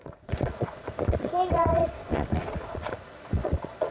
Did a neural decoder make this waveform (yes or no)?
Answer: yes